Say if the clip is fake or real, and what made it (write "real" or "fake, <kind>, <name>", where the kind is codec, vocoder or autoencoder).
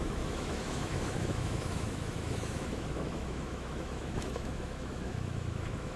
fake, autoencoder, DAC-VAE